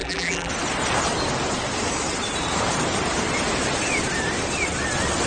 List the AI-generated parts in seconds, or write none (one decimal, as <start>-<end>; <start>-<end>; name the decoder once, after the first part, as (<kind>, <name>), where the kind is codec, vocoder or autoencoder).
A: 0.0-0.5 (vocoder, BigVGAN v2)